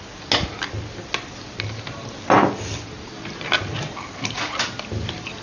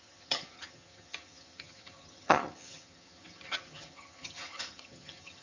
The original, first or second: first